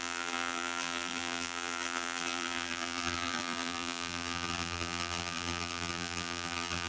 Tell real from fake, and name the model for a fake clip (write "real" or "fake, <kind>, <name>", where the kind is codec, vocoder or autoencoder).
fake, vocoder, BigVGAN v2